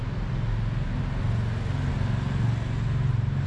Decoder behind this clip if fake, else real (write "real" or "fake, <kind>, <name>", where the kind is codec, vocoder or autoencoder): real